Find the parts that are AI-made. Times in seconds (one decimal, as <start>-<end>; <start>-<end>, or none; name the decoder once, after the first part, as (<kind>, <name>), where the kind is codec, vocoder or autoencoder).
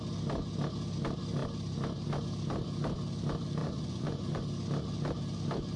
3.6-4.4 (vocoder, Vocos)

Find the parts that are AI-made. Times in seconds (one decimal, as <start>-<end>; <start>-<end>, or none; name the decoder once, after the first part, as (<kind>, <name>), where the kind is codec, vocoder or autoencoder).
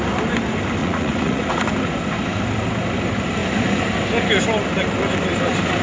0.8-1.7 (vocoder, Vocos)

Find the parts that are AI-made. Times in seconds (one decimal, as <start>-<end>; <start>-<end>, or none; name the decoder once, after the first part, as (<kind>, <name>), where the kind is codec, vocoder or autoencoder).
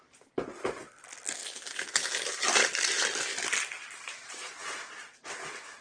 none